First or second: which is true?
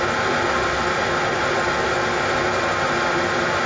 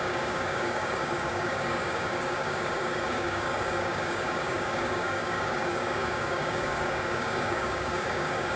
first